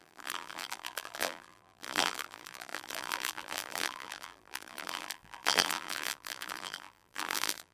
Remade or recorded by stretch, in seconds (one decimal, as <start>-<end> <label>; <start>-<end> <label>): 0.0-7.7 remade

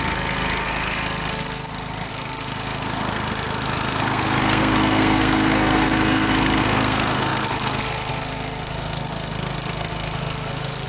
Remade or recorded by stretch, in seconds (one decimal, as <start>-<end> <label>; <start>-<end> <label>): 0.0-10.9 remade